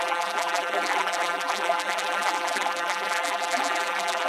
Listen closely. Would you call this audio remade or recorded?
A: remade